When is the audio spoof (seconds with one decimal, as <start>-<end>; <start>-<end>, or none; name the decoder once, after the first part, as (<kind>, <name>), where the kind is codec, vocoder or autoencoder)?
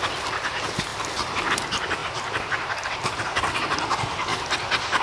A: 2.0-3.6 (vocoder, BigVGAN v2)